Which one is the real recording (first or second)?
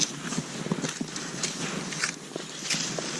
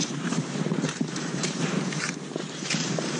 first